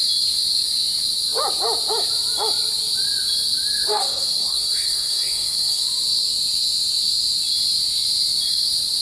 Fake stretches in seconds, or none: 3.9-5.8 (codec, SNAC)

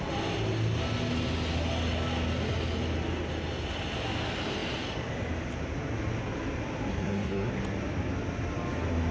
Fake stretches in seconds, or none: 6.9-7.5 (codec, SNAC)

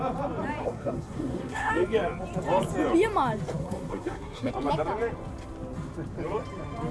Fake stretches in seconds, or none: 0.6-1.7 (codec, SNAC); 3.6-4.5